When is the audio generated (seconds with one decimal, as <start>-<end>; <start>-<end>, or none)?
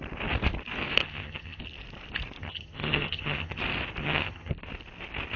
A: 1.0-1.6; 2.4-3.6; 4.0-4.5